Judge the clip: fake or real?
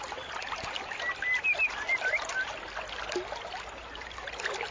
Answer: real